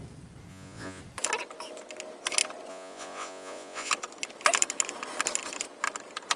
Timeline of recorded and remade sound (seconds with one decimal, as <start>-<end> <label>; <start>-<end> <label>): 0.0-0.5 recorded; 0.5-1.0 remade; 1.0-2.7 recorded; 2.7-3.9 remade; 3.9-6.4 recorded